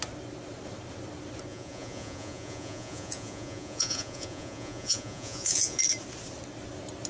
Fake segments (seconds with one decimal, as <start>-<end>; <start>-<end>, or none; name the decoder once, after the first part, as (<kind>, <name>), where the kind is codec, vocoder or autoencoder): 1.5-5.8 (vocoder, Vocos)